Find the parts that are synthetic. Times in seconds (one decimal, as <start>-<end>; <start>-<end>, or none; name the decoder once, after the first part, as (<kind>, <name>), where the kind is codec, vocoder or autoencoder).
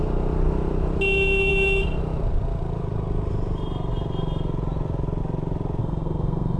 5.8-6.6 (codec, SNAC)